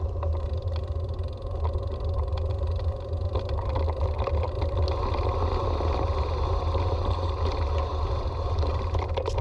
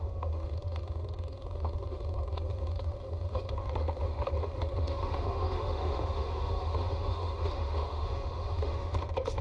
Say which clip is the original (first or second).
first